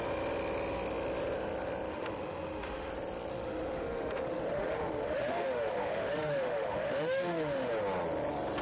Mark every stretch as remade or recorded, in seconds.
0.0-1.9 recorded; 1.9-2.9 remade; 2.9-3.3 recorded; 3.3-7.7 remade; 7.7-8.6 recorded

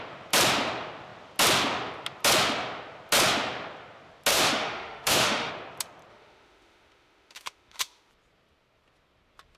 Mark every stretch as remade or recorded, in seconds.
0.0-4.3 recorded; 4.3-5.5 remade; 5.5-6.1 recorded; 6.1-8.1 remade; 8.1-9.6 recorded

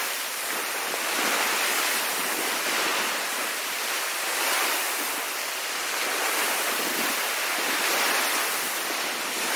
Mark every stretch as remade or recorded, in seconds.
0.0-9.6 recorded

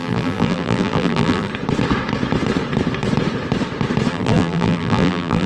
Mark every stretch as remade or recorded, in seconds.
0.0-1.5 remade; 1.5-4.1 recorded; 4.1-5.5 remade

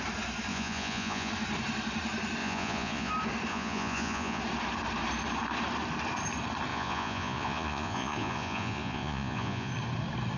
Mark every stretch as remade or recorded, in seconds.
0.0-0.5 recorded; 0.5-1.3 remade; 1.3-2.4 recorded; 2.4-3.1 remade; 3.1-3.5 recorded; 3.5-4.4 remade; 4.4-6.7 recorded; 6.7-9.7 remade; 9.7-10.4 recorded

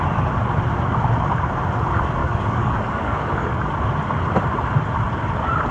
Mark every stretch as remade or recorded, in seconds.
0.0-2.2 recorded; 2.2-3.7 remade; 3.7-5.7 recorded

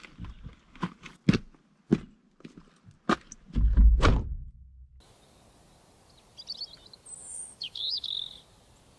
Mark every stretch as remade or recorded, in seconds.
0.0-7.2 recorded; 7.2-8.4 remade; 8.4-9.0 recorded

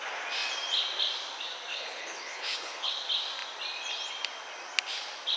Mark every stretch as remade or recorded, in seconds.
0.0-1.7 recorded; 1.7-2.9 remade; 2.9-5.4 recorded